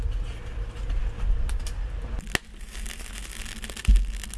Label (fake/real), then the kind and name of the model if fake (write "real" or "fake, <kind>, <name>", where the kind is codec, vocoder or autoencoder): real